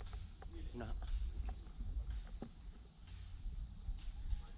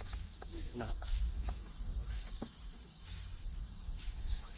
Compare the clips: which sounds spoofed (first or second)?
second